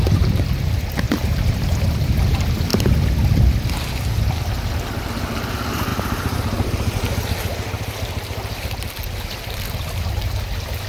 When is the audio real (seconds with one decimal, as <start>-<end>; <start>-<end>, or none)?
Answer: 0.0-5.9; 7.0-10.9